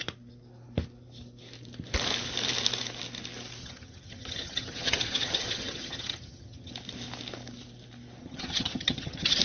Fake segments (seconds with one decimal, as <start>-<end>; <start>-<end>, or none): 3.6-6.7; 8.2-9.4

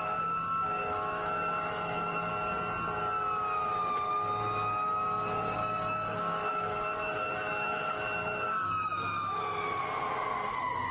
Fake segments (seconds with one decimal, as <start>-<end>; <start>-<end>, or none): 0.8-2.3; 5.6-9.8

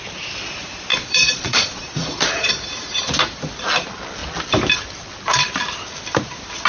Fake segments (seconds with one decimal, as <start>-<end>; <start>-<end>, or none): 0.9-2.5